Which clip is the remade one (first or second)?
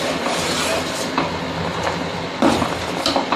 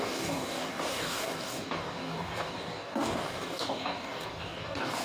second